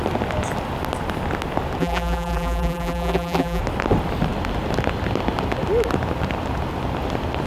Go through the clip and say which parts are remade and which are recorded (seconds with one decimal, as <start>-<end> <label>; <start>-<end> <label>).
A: 0.0-1.8 recorded; 1.8-3.6 remade; 3.6-7.5 recorded